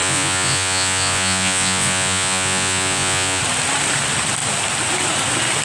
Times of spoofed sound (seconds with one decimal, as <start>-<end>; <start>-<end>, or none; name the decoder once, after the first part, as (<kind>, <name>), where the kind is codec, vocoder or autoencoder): 0.0-3.4 (vocoder, Vocos)